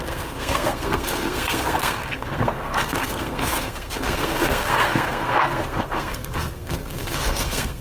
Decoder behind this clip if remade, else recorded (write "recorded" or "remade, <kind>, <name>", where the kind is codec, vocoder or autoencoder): remade, codec, SNAC